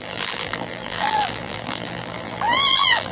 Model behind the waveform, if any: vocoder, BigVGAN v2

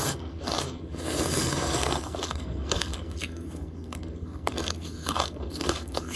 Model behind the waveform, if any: codec, SNAC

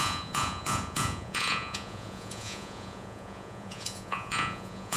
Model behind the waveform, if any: vocoder, Vocos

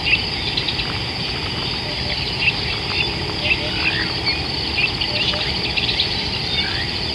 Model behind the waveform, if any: none